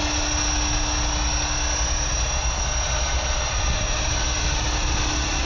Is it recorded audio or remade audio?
recorded